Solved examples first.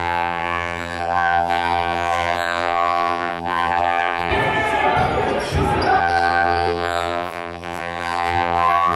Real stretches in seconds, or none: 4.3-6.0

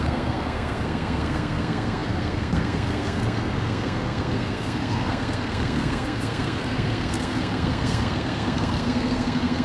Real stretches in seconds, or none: none

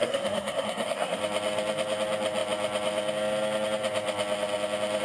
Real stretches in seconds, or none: 1.2-5.0

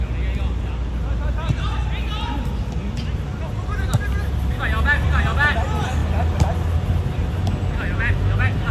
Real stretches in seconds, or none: 0.0-8.7

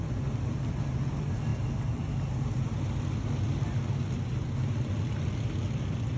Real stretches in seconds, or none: 0.0-6.2

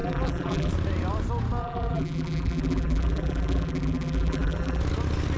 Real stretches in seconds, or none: 0.7-1.6; 4.8-5.4

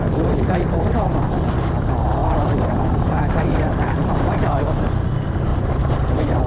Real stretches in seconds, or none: 0.0-2.2; 4.6-5.5

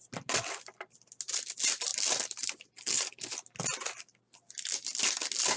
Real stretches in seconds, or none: 0.0-5.6